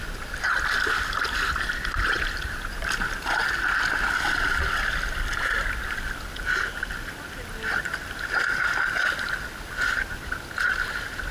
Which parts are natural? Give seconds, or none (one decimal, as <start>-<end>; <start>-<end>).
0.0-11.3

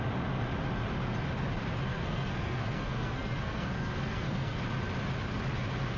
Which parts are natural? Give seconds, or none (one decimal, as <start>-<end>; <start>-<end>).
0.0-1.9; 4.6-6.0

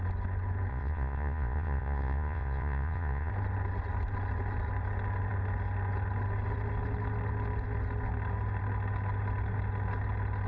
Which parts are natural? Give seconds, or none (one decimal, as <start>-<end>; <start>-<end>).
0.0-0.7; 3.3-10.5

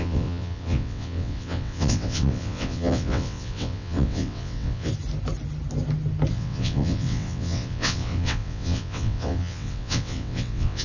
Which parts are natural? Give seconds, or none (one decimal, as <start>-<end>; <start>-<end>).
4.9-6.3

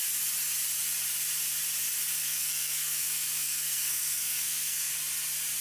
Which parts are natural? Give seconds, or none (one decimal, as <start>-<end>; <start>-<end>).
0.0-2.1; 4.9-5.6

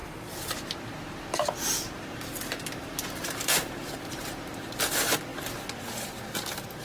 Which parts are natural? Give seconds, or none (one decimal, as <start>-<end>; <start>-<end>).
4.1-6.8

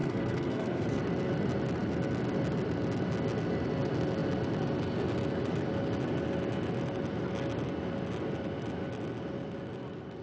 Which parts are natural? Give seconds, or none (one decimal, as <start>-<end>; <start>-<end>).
1.0-10.2